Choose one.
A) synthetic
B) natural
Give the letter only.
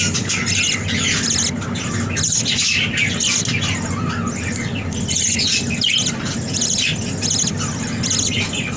B